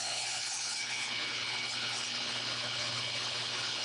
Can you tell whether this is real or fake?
fake